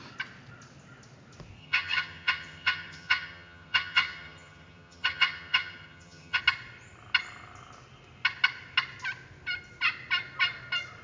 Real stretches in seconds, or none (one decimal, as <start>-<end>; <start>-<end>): 0.0-1.6; 6.4-11.0